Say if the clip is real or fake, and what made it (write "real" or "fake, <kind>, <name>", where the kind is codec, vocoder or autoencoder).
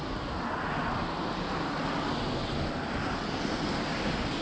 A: real